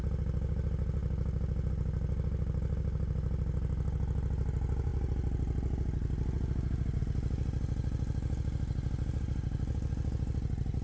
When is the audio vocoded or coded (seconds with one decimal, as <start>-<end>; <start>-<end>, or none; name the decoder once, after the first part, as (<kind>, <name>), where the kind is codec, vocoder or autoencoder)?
none